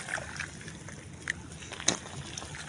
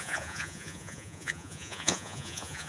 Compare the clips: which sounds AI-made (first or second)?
second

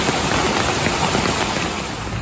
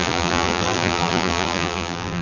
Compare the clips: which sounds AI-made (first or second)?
second